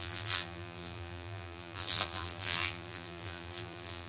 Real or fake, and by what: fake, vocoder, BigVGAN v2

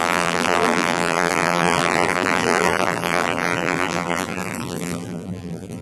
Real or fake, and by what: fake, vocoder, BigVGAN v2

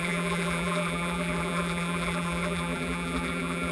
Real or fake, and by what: fake, vocoder, BigVGAN v2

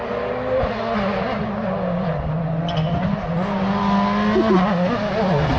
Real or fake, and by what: real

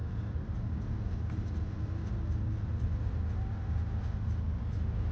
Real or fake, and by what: real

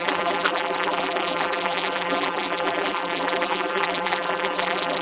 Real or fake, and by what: fake, vocoder, BigVGAN v2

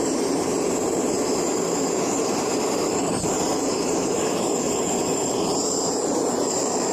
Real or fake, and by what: fake, vocoder, BigVGAN v2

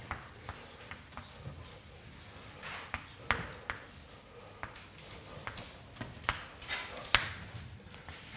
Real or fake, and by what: real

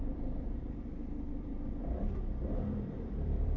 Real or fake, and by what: fake, vocoder, BigVGAN v2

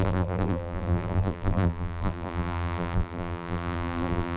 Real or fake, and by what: fake, vocoder, BigVGAN v2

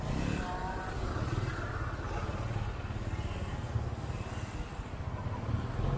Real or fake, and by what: real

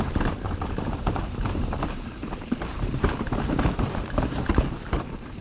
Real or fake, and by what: fake, vocoder, BigVGAN v2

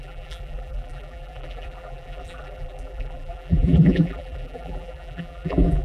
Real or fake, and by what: fake, vocoder, BigVGAN v2